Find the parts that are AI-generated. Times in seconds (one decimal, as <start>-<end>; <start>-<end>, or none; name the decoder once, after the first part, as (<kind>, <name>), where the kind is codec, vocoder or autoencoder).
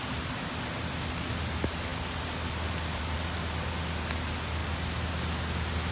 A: none